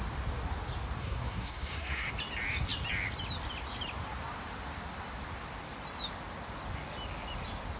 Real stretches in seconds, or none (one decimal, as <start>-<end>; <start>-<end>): 0.0-1.0; 2.1-7.8